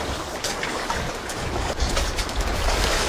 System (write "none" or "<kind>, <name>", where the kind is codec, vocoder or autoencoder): codec, DAC